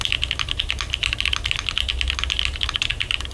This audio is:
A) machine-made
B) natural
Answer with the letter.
B